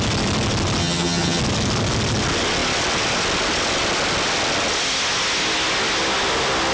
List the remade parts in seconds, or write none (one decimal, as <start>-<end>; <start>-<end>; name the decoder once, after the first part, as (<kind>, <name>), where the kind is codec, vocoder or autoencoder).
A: 0.8-1.4 (vocoder, HiFi-GAN)